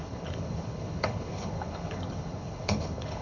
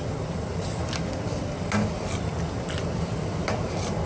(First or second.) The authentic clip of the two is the second